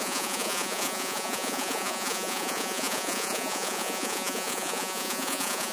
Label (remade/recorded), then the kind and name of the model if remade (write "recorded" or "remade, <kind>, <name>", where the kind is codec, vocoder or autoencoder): remade, vocoder, Vocos